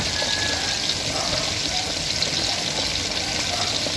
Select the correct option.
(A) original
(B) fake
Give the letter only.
A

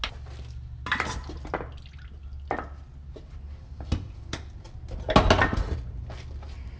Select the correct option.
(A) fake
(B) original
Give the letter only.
B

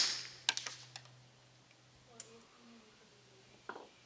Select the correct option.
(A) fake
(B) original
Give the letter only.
B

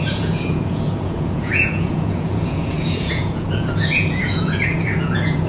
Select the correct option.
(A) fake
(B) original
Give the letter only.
A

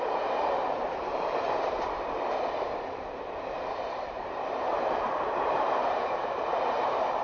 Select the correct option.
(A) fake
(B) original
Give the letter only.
A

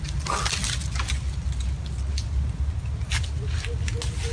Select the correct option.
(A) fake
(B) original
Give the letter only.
B